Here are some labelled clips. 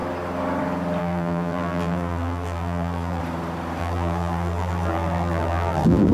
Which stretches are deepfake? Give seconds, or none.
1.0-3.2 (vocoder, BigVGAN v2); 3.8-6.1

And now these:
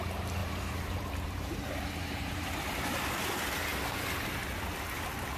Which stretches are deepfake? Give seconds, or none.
0.4-2.5 (vocoder, BigVGAN v2)